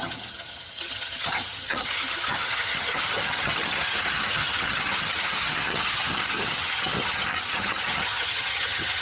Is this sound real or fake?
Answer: fake